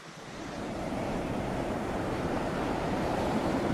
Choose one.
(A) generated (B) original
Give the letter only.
A